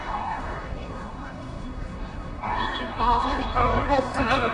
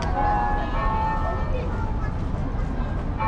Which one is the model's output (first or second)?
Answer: first